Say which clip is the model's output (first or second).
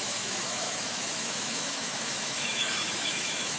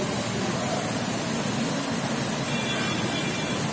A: first